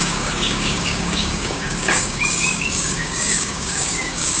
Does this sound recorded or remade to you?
remade